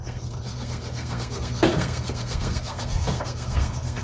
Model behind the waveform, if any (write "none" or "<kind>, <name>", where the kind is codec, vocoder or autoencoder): codec, SNAC